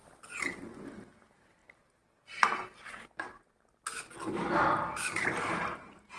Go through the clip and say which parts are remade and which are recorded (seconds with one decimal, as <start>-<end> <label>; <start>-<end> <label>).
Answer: 0.0-1.0 recorded; 1.0-1.6 remade; 1.6-5.3 recorded; 5.3-6.2 remade